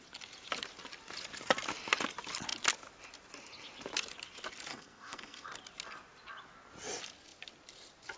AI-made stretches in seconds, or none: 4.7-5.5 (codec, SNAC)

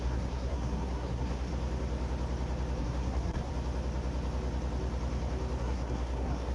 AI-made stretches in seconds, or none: 0.0-1.5 (codec, SNAC); 2.8-3.5; 5.6-6.5

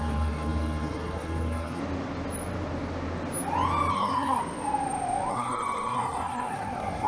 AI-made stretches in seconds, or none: 0.0-1.8 (codec, SNAC); 3.9-4.4; 5.3-7.1

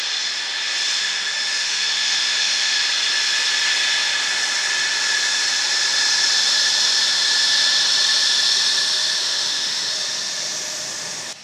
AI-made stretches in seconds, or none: 1.0-2.8 (autoencoder, DAC-VAE); 9.2-9.9

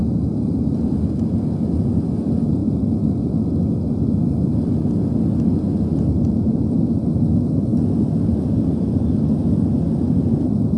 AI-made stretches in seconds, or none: none

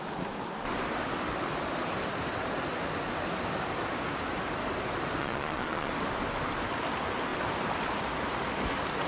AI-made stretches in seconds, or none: 5.2-5.9 (vocoder, Vocos)

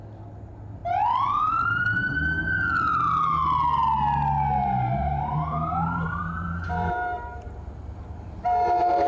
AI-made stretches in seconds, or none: 4.6-8.2 (vocoder, BigVGAN v2)